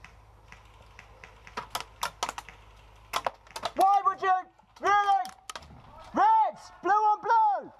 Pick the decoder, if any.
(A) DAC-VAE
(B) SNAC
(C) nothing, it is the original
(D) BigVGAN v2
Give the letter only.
C